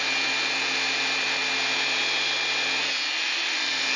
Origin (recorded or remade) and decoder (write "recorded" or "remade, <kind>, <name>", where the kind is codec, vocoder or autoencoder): recorded